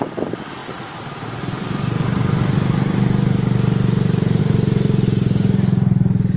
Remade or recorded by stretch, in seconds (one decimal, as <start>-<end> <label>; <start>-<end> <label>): 0.0-6.4 recorded